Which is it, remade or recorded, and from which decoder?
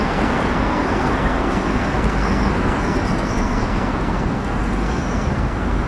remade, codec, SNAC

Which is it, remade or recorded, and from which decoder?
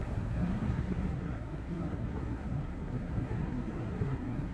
remade, codec, SNAC